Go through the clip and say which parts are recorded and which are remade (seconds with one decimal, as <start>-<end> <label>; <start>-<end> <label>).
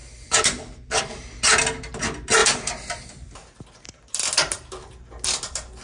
0.0-5.8 recorded